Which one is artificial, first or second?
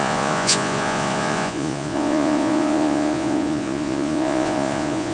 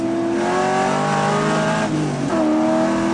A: first